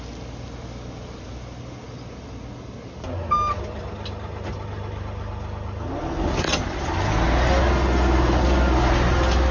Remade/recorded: recorded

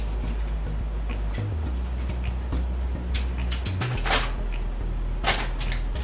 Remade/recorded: recorded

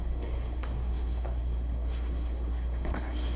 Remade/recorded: remade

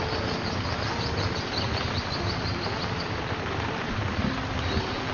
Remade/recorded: remade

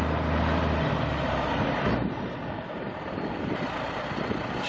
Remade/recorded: recorded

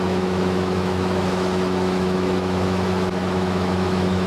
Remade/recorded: remade